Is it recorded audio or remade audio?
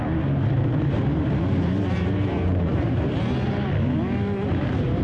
remade